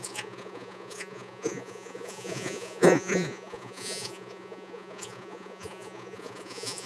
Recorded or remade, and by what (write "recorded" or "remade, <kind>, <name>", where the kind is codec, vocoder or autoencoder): remade, vocoder, Vocos